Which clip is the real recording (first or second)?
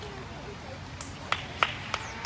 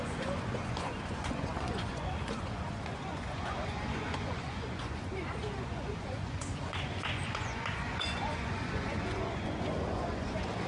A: first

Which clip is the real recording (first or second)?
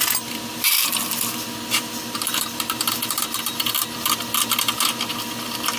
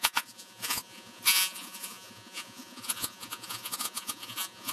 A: first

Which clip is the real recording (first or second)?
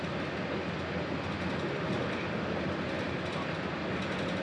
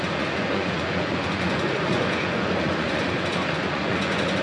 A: first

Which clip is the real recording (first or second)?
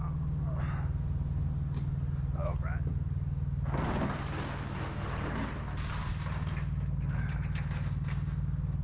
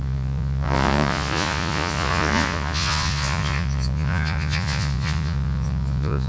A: first